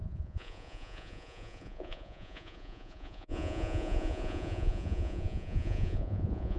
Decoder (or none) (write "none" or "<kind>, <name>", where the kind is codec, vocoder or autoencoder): vocoder, Vocos